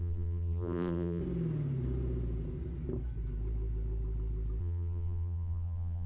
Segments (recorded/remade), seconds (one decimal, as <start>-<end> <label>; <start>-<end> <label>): 0.0-1.2 remade; 1.2-4.6 recorded; 4.6-6.1 remade